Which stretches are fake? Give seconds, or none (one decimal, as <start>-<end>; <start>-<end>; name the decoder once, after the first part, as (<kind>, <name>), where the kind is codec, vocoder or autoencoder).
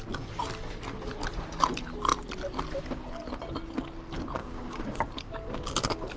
4.4-5.0 (codec, DAC)